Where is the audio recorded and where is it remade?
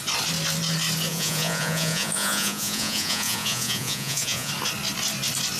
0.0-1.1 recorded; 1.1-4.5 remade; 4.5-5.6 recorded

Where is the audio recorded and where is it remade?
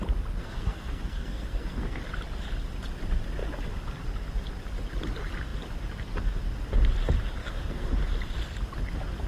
0.0-0.4 recorded; 0.4-2.0 remade; 2.0-7.4 recorded; 7.4-7.9 remade; 7.9-9.3 recorded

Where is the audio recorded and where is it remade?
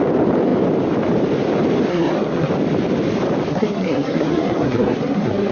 0.0-1.9 recorded; 1.9-2.5 remade; 2.5-3.5 recorded; 3.5-5.5 remade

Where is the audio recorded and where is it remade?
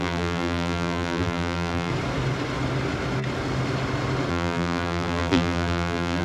0.0-1.9 remade; 1.9-4.3 recorded; 4.3-6.2 remade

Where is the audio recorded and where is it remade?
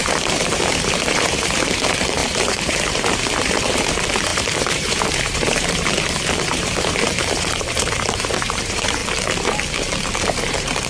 0.0-9.0 remade; 9.0-10.5 recorded; 10.5-10.9 remade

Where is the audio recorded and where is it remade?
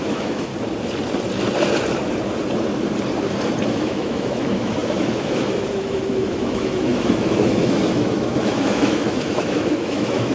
0.0-0.5 remade; 0.5-3.7 recorded; 3.7-10.3 remade